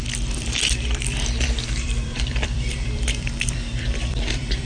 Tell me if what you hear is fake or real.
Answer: fake